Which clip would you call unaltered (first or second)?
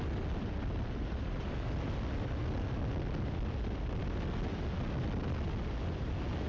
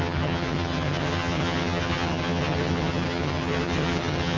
first